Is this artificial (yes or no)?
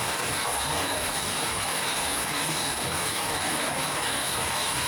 yes